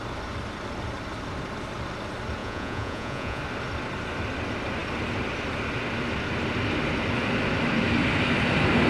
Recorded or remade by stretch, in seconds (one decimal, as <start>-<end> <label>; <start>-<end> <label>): 0.0-2.4 recorded; 2.4-3.4 remade; 3.4-8.9 recorded